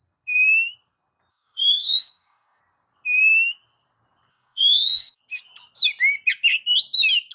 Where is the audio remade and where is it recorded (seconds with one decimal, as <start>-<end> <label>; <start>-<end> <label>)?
0.0-1.3 recorded; 1.3-2.6 remade; 2.6-4.3 recorded; 4.3-5.2 remade; 5.2-7.3 recorded